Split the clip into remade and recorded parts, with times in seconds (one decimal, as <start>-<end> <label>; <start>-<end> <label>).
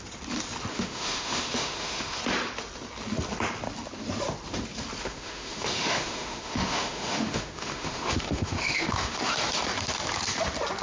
0.0-0.7 recorded; 0.7-2.2 remade; 2.2-5.0 recorded; 5.0-9.3 remade; 9.3-10.8 recorded